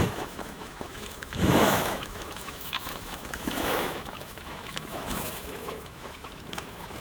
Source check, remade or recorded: remade